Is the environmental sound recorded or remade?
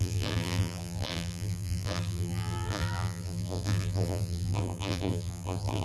remade